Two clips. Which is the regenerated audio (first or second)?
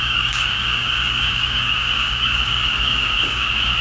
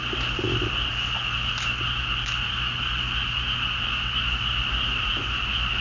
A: first